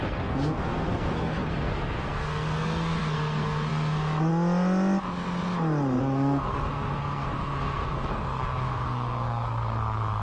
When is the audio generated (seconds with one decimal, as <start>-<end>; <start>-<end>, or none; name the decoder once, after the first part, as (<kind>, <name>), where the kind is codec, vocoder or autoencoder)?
0.0-4.3 (codec, SNAC); 6.0-10.2